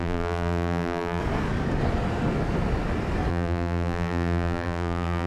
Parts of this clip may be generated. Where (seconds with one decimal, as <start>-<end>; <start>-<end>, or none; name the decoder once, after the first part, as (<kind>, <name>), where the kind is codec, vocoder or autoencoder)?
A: 0.0-1.2 (vocoder, BigVGAN v2); 3.3-5.3